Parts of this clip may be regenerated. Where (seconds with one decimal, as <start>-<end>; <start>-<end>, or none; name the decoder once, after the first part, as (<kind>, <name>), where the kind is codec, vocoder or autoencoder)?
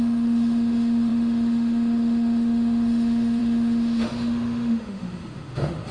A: 0.0-5.9 (autoencoder, DAC-VAE)